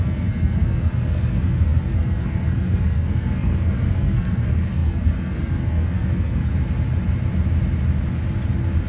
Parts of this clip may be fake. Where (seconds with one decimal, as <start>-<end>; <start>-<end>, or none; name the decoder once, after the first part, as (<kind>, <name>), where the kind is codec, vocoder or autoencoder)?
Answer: 0.0-6.5 (codec, SNAC)